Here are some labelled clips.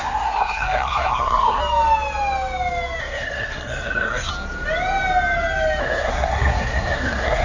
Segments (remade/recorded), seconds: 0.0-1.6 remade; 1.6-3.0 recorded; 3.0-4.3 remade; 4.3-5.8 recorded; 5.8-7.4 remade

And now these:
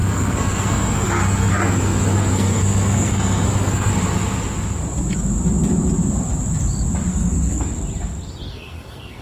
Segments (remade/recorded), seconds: 0.0-3.9 remade; 3.9-7.1 recorded; 7.1-7.7 remade; 7.7-8.5 recorded; 8.5-9.2 remade

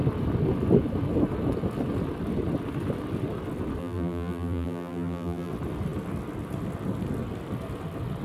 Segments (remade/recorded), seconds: 0.0-3.8 recorded; 3.8-5.5 remade; 5.5-8.2 recorded

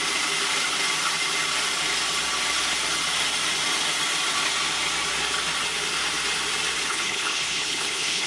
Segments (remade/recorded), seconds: 0.0-6.9 recorded; 6.9-8.3 remade